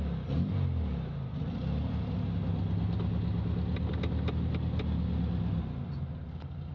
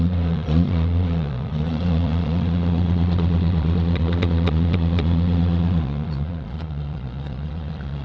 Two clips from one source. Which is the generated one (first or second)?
second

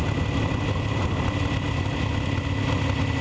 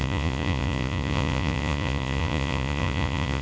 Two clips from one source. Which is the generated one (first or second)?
second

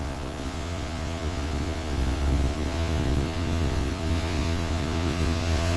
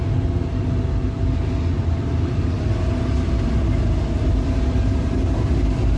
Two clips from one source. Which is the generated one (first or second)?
first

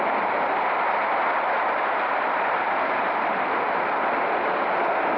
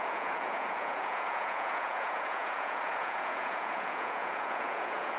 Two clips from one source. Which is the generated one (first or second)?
second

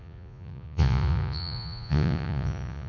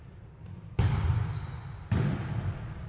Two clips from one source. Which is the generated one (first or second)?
first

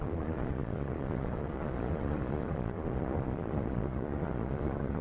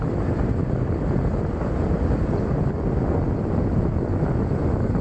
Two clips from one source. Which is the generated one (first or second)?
first